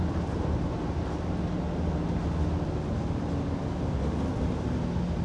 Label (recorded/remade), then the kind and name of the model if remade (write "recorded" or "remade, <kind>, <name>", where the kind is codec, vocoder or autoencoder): recorded